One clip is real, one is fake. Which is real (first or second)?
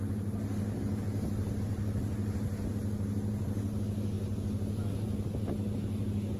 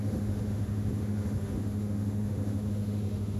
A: first